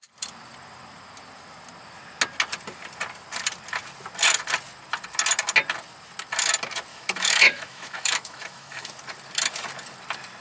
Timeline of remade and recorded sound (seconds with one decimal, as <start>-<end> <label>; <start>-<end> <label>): 0.0-6.9 recorded; 6.9-8.9 remade; 8.9-10.4 recorded